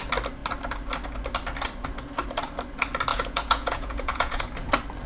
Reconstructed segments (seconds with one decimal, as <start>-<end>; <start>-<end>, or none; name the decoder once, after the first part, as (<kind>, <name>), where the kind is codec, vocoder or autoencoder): 3.1-4.4 (vocoder, Vocos)